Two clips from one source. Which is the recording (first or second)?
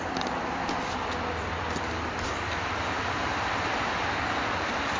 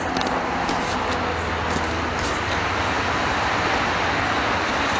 second